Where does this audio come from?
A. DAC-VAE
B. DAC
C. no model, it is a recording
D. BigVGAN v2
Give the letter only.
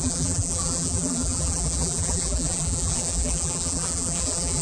D